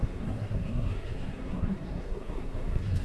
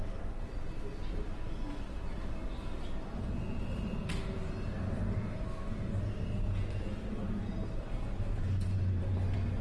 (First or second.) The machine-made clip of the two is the first